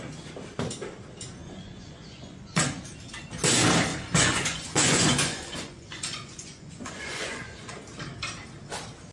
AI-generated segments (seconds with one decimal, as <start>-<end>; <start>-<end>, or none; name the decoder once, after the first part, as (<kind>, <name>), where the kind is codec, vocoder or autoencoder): 1.4-2.9 (vocoder, Vocos); 3.9-7.7